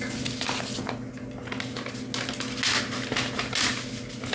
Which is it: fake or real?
real